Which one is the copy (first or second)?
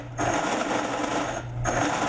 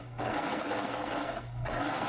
second